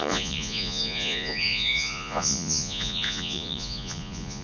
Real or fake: fake